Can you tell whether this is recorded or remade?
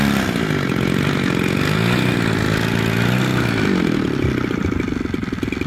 recorded